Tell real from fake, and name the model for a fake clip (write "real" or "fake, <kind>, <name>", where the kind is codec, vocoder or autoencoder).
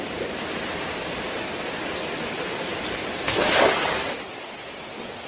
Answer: real